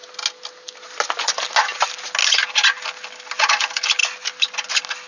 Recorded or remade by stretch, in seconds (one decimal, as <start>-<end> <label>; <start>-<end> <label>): 0.0-5.1 recorded